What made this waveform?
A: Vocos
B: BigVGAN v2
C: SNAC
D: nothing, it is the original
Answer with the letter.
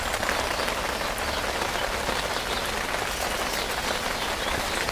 D